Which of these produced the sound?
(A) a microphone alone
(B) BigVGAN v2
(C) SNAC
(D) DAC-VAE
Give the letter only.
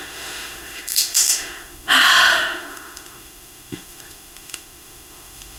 D